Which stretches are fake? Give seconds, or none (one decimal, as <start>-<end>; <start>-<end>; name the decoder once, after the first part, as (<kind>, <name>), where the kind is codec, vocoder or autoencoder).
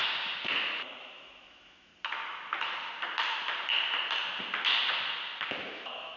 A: 1.0-1.9 (autoencoder, DAC-VAE); 5.6-6.2